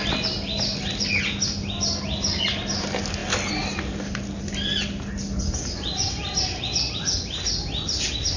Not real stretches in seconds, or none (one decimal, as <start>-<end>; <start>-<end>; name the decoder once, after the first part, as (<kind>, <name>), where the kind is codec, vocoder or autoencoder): none